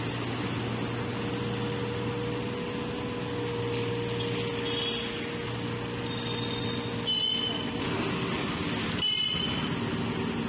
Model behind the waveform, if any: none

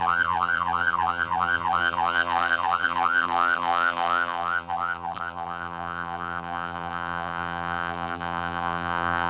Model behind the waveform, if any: vocoder, BigVGAN v2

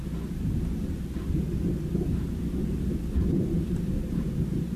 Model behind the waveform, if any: none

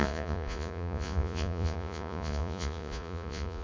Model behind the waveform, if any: vocoder, Vocos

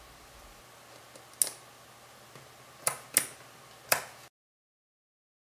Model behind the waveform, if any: none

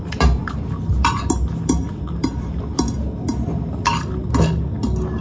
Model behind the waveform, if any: none